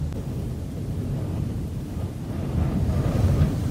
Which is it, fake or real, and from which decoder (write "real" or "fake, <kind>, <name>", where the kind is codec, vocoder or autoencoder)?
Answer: real